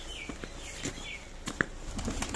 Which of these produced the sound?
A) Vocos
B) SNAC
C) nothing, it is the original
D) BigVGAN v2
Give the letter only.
C